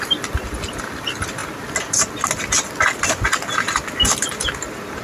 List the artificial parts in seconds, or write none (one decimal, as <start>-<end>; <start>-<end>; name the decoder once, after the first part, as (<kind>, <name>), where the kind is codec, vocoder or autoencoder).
none